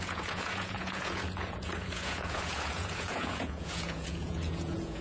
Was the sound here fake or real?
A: fake